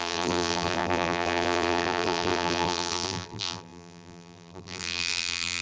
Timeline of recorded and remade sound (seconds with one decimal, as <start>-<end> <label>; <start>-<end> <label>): 0.0-5.6 remade